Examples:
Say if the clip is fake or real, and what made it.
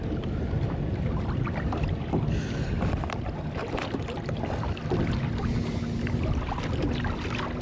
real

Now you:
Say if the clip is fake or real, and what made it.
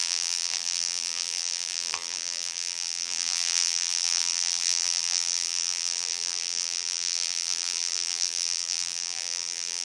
fake, vocoder, BigVGAN v2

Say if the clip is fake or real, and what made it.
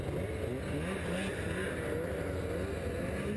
real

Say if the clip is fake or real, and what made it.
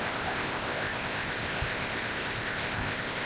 fake, codec, ZipCodec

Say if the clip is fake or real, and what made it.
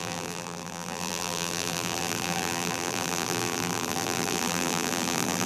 fake, vocoder, BigVGAN v2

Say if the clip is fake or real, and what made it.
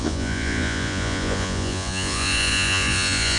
fake, vocoder, Vocos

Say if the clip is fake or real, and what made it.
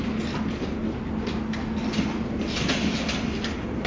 real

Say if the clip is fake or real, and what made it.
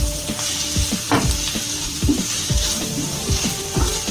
fake, vocoder, BigVGAN v2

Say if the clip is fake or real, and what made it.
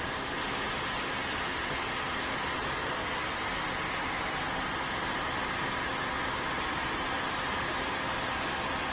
real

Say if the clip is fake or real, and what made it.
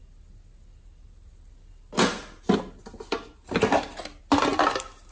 real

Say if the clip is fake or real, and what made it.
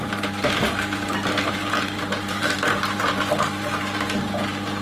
fake, vocoder, BigVGAN v2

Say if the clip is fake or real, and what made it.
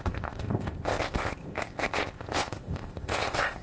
fake, codec, ZipCodec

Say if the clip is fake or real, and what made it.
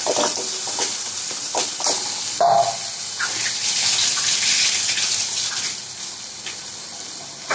real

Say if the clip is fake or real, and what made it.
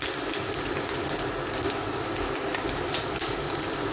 real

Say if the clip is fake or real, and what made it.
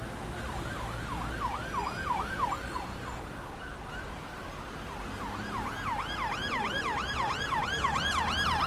real